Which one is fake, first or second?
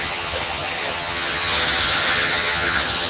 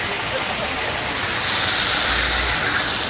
first